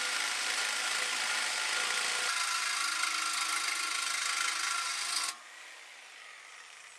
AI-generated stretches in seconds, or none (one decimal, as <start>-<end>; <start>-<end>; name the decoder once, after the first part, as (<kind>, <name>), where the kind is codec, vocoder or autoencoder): none